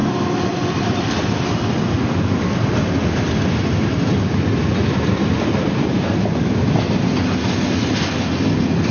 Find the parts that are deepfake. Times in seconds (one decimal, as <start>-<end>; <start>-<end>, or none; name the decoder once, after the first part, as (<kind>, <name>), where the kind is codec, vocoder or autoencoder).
0.0-1.7 (vocoder, BigVGAN v2)